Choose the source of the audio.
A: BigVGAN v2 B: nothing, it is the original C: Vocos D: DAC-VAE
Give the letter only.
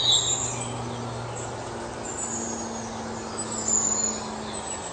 B